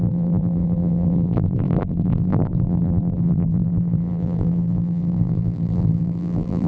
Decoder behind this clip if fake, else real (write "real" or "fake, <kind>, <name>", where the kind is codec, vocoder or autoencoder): fake, vocoder, BigVGAN v2